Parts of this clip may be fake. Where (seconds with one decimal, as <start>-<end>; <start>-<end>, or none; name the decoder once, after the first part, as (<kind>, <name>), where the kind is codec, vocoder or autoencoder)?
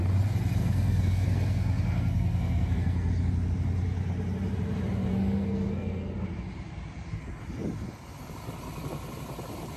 0.6-3.1 (codec, SNAC); 5.1-6.1